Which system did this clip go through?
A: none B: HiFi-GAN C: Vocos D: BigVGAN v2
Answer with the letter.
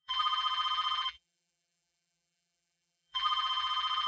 D